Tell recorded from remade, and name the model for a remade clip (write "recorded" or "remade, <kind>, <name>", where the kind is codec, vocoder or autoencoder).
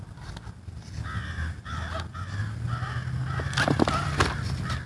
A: recorded